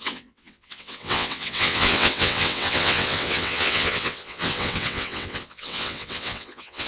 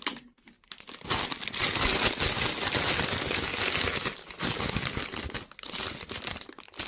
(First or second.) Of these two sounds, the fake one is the first